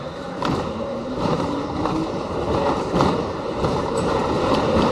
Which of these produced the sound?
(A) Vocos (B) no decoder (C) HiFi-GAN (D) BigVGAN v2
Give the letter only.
D